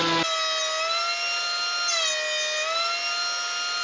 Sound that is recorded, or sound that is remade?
recorded